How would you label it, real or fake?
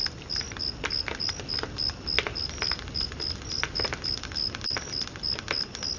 real